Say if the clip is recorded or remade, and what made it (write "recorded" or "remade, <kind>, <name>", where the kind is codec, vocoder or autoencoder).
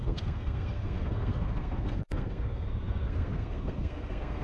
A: remade, codec, SNAC